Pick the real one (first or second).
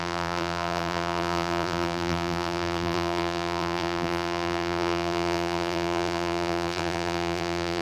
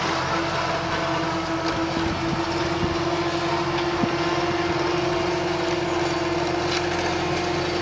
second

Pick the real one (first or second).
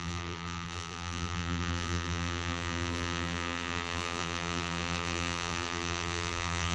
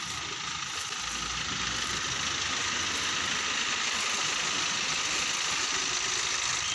second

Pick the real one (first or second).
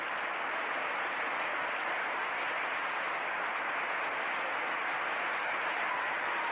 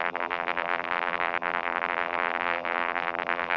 first